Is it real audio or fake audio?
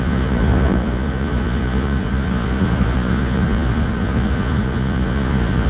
fake